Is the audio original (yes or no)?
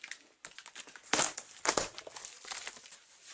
yes